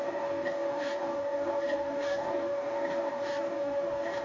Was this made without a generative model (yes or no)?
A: no